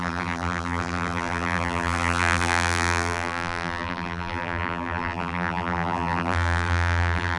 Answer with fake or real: fake